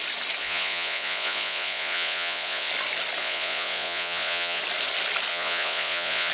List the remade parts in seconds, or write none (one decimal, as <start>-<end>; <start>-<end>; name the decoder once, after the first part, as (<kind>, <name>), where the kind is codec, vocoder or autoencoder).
0.4-2.7 (vocoder, Vocos); 3.2-4.6; 5.3-6.3